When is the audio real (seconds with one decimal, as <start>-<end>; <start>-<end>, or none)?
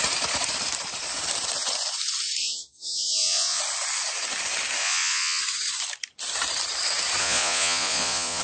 0.0-2.4; 3.6-4.8; 5.4-7.2